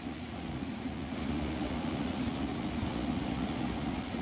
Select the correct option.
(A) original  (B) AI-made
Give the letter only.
B